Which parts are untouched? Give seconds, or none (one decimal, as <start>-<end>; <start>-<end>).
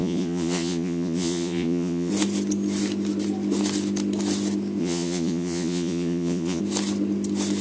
2.1-4.8; 6.6-7.6